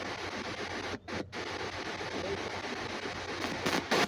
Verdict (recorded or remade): recorded